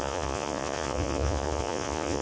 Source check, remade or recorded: remade